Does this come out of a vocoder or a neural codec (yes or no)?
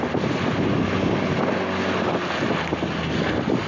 no